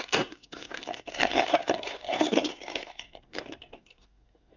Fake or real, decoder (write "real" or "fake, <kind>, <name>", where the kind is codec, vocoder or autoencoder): fake, codec, SNAC